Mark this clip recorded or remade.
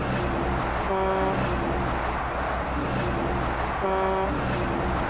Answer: recorded